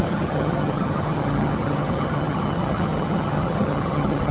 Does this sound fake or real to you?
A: fake